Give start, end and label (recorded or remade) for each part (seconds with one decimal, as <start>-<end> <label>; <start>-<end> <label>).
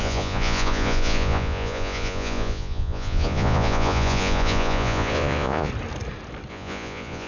0.0-5.7 remade; 5.7-6.5 recorded; 6.5-7.3 remade